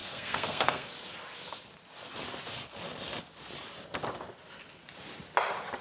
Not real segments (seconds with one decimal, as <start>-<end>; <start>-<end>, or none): 0.0-0.9